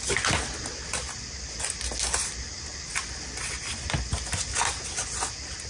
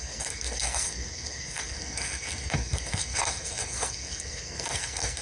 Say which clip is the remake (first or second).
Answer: second